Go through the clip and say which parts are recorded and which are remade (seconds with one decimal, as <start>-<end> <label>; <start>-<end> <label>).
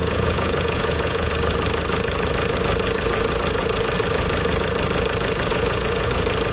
0.0-1.3 remade; 1.3-5.5 recorded; 5.5-6.1 remade; 6.1-6.5 recorded